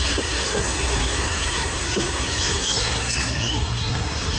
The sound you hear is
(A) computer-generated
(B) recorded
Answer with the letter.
A